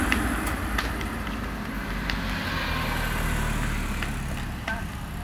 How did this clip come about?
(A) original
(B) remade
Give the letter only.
A